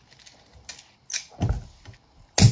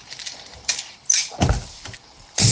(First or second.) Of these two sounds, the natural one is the first